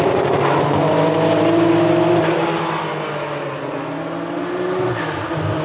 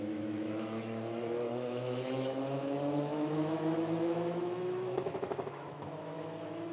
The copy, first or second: second